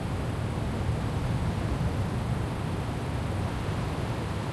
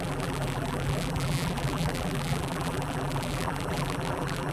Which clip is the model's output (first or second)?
second